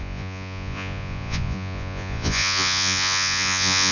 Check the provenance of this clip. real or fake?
fake